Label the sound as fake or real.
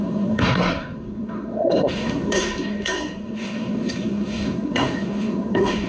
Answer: fake